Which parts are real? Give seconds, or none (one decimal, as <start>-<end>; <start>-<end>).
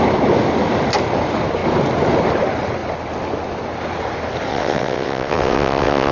0.0-4.5